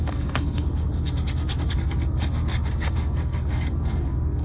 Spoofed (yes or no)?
yes